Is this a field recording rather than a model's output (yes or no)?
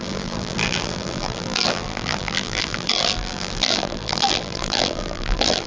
no